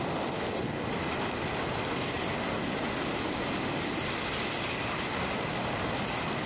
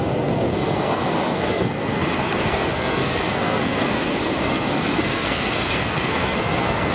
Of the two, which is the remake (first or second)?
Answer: second